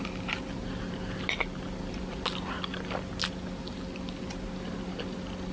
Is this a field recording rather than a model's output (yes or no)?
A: yes